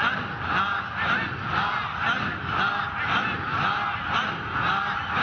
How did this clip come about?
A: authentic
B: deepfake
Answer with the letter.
A